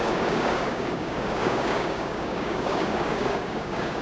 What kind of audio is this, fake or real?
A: fake